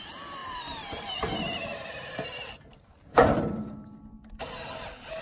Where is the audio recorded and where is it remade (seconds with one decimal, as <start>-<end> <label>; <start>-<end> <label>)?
0.0-0.4 recorded; 0.4-3.5 remade; 3.5-5.2 recorded